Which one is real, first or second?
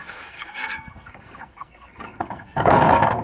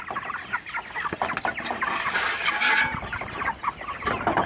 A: second